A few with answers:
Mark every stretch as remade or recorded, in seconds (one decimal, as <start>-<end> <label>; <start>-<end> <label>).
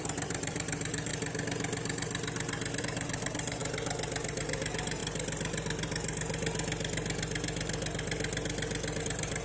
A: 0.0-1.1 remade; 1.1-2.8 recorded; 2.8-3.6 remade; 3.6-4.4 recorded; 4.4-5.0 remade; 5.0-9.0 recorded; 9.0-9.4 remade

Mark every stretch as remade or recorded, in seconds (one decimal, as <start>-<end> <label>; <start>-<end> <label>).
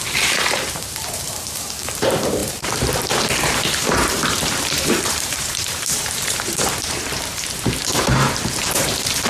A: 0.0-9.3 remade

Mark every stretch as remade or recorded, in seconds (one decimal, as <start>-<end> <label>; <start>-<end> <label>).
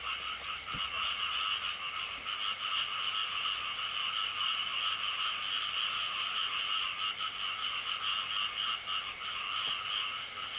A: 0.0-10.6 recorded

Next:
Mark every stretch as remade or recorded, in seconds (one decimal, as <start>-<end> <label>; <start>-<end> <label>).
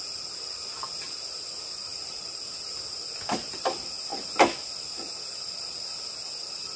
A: 0.0-1.9 recorded; 1.9-2.6 remade; 2.6-6.8 recorded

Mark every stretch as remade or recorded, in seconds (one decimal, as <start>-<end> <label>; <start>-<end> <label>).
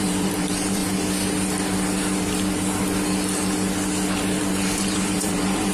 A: 0.0-0.8 remade; 0.8-4.2 recorded; 4.2-5.7 remade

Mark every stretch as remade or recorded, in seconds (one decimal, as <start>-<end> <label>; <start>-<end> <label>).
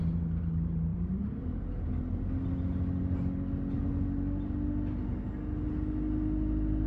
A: 0.0-0.9 recorded; 0.9-1.6 remade; 1.6-6.9 recorded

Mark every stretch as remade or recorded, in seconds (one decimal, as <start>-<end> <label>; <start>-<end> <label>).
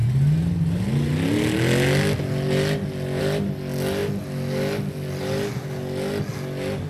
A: 0.0-6.9 recorded